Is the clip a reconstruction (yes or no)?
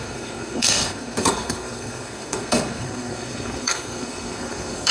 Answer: yes